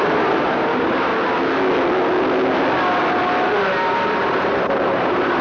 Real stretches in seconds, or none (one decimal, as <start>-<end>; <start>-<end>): 1.1-3.9